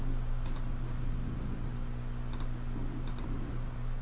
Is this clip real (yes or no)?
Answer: yes